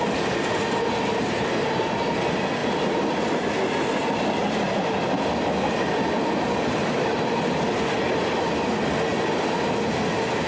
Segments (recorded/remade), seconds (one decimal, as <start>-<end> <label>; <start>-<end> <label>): 0.0-10.5 recorded